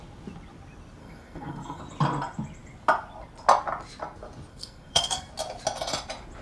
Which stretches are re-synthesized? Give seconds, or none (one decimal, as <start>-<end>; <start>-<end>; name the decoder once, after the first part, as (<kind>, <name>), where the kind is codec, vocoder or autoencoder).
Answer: 1.0-1.8 (codec, SNAC); 4.5-5.3